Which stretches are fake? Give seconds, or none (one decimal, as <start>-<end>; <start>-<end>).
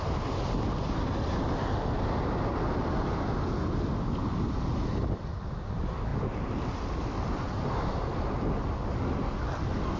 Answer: none